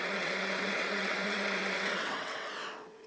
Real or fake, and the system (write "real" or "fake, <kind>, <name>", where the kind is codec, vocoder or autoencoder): fake, vocoder, WaveNeXt